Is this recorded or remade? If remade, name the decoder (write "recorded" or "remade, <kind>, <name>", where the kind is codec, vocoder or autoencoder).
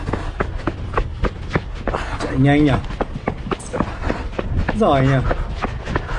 recorded